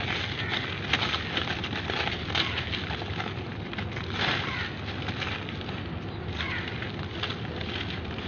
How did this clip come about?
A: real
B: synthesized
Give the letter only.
A